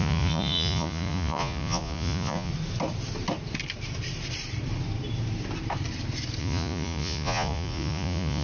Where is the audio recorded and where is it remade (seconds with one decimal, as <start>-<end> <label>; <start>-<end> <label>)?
0.0-2.5 remade; 2.5-6.4 recorded; 6.4-8.4 remade